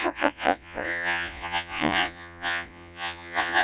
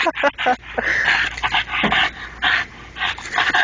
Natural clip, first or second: second